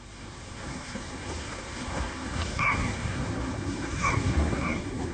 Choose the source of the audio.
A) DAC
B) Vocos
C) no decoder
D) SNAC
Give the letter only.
D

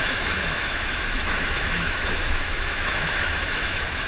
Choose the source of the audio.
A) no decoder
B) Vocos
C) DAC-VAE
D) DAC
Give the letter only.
C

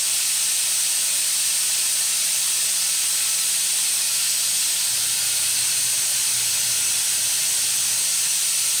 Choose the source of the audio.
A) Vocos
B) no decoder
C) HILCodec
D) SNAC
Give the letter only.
B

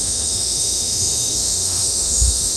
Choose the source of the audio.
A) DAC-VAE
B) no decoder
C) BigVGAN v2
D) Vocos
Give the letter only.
A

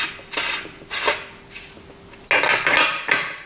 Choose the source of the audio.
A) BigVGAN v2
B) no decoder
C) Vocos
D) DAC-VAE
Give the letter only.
B